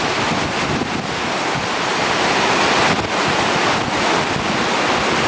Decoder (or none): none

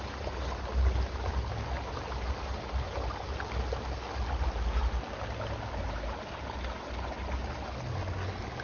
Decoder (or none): none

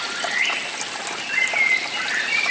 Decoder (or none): none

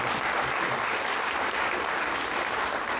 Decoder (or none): none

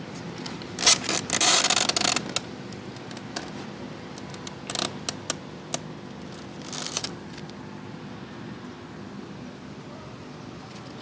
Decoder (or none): none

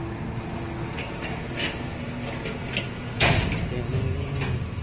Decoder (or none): none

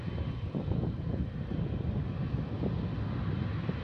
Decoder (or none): none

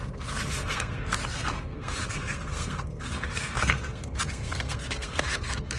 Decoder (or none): codec, SNAC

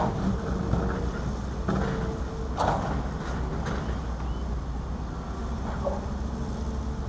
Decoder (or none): none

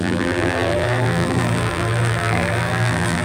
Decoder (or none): vocoder, BigVGAN v2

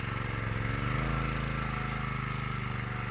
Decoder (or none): none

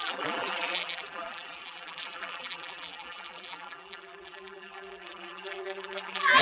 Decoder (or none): vocoder, BigVGAN v2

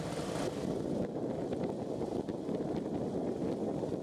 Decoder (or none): none